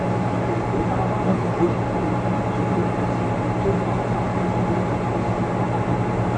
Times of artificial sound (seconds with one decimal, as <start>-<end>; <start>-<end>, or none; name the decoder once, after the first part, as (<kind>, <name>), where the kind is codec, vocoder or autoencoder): 1.3-1.8 (codec, HILCodec)